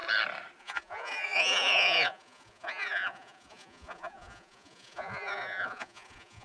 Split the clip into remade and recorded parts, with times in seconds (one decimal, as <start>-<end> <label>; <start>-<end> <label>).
0.0-0.6 recorded; 0.6-6.4 remade